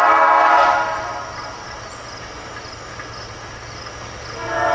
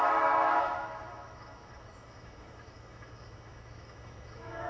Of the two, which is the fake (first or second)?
second